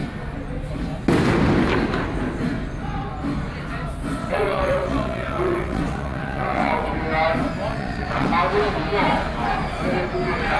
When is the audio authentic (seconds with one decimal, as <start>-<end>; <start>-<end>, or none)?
0.0-4.2; 6.9-7.7; 8.3-10.6